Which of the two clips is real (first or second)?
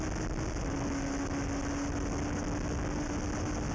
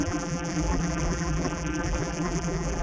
first